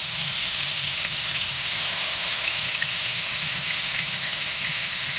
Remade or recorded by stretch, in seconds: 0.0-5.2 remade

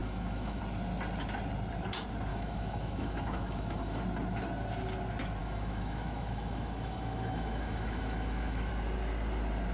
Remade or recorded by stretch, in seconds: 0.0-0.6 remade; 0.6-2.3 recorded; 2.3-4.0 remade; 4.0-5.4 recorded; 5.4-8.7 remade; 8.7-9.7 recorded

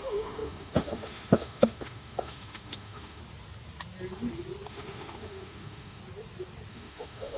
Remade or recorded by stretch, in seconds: 0.0-3.2 remade; 3.2-4.7 recorded; 4.7-6.0 remade; 6.0-6.7 recorded; 6.7-7.4 remade